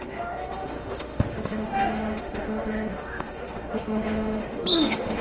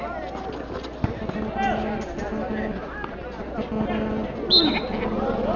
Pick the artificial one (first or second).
first